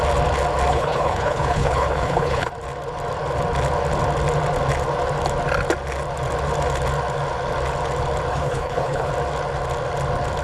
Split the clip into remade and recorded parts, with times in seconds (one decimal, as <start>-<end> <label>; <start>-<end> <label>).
0.0-0.7 recorded; 0.7-2.5 remade; 2.5-8.3 recorded; 8.3-9.1 remade; 9.1-10.4 recorded